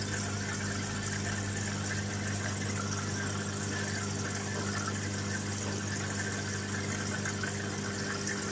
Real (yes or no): yes